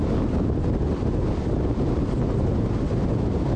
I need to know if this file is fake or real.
real